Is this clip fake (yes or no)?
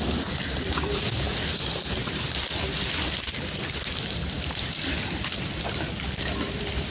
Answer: yes